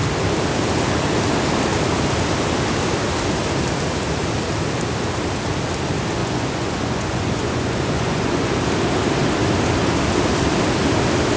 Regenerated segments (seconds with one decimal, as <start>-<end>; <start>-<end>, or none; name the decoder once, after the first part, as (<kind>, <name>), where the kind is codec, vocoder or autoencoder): 6.2-8.5 (vocoder, Vocos)